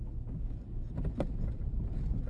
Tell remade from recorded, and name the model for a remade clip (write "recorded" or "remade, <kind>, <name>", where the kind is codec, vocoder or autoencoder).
recorded